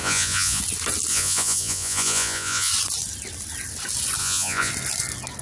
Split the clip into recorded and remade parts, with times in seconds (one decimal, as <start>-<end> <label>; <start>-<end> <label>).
0.0-0.6 remade; 0.6-1.1 recorded; 1.1-2.7 remade; 2.7-4.2 recorded; 4.2-4.7 remade; 4.7-5.4 recorded